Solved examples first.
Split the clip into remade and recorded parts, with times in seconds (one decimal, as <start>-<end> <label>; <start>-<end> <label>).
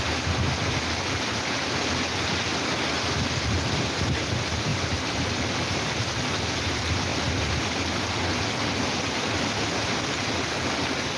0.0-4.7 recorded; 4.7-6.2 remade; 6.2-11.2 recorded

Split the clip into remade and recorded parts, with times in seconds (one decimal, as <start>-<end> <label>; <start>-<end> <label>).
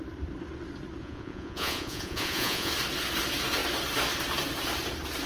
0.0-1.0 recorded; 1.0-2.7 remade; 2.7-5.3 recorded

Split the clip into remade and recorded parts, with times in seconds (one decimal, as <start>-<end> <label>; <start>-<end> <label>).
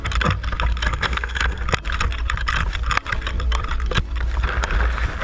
0.0-0.9 recorded; 0.9-1.6 remade; 1.6-5.2 recorded